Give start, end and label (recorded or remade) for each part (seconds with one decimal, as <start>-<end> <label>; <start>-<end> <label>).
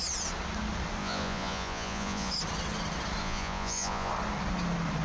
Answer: 0.0-1.0 recorded; 1.0-2.3 remade; 2.3-3.2 recorded; 3.2-4.1 remade; 4.1-5.0 recorded